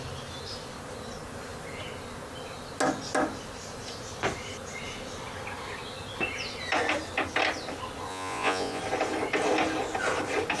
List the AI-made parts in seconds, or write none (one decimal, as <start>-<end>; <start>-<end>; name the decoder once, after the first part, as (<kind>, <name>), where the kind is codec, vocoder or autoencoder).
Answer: 8.1-8.8 (vocoder, Vocos)